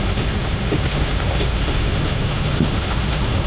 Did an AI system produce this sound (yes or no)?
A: yes